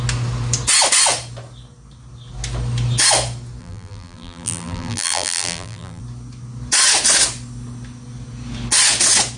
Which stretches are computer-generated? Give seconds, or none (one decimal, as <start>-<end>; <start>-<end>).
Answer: 3.6-6.0